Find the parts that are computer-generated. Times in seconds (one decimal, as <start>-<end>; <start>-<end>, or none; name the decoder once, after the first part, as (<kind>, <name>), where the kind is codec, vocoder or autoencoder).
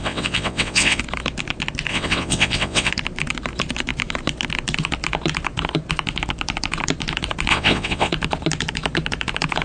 0.0-1.0 (vocoder, WaveNeXt); 1.9-2.9; 7.5-8.1